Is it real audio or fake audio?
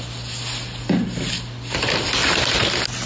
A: real